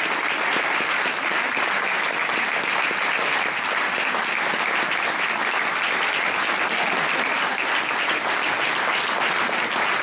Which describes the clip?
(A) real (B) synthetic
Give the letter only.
A